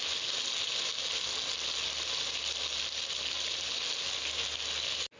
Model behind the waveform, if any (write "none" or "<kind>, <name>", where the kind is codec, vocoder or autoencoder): none